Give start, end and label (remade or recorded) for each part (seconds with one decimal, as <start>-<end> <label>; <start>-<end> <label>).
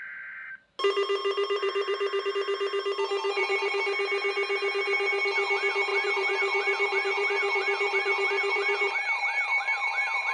0.0-1.2 recorded; 1.2-2.3 remade; 2.3-3.2 recorded; 3.2-3.7 remade; 3.7-5.9 recorded; 5.9-10.3 remade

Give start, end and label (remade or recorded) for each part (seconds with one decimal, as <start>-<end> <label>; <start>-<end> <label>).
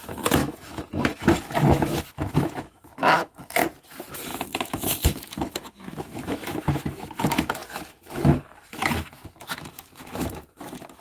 0.0-3.6 remade; 3.6-4.1 recorded; 4.1-11.0 remade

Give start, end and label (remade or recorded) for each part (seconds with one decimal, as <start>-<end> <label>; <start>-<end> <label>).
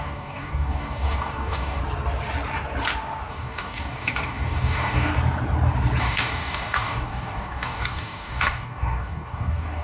0.0-1.8 remade; 1.8-3.3 recorded; 3.3-5.1 remade; 5.1-6.0 recorded; 6.0-9.8 remade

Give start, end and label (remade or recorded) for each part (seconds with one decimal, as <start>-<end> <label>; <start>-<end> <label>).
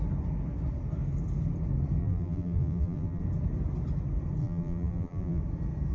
0.0-2.0 recorded; 2.0-3.2 remade; 3.2-4.4 recorded; 4.4-5.4 remade; 5.4-5.9 recorded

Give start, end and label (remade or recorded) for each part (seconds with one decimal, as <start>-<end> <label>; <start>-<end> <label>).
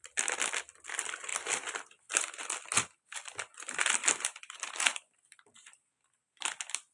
0.0-6.9 recorded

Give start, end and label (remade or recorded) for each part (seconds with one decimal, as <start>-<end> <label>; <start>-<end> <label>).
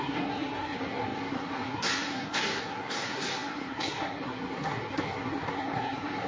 0.0-6.3 remade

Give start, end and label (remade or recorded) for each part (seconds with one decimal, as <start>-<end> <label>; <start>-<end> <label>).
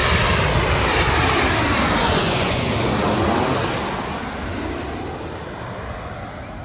0.0-2.0 recorded; 2.0-2.7 remade; 2.7-6.6 recorded